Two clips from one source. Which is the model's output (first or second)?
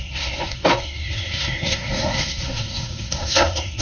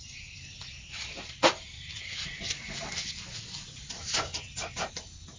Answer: first